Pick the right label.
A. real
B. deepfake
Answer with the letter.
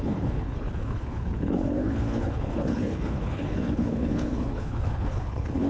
B